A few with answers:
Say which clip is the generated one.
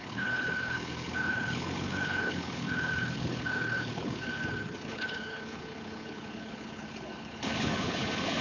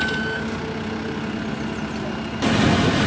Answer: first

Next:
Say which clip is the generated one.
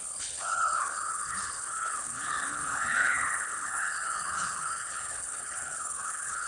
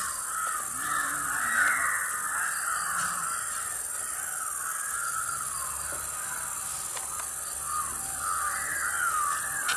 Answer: first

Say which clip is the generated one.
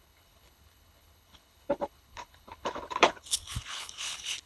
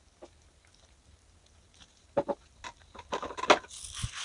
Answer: first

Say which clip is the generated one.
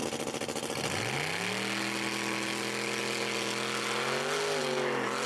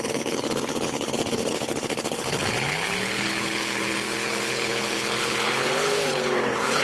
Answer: second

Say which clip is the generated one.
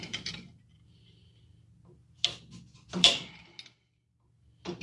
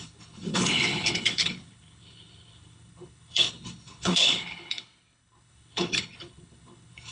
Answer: second